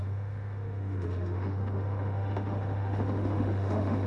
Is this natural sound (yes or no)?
no